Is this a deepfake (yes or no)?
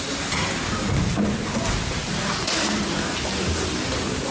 no